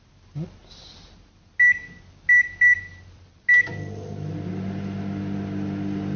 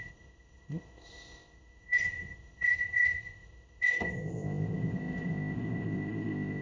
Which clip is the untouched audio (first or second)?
first